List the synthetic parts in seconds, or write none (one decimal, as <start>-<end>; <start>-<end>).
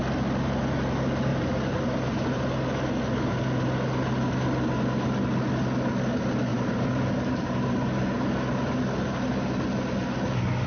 1.3-2.4; 6.5-7.0